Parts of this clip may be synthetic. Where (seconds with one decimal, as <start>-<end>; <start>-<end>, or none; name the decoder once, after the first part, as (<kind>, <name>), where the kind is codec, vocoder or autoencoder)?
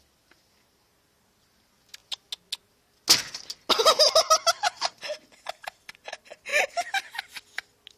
none